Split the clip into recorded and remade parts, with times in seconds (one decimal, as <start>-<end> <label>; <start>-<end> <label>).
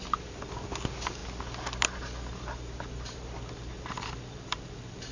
0.0-5.1 recorded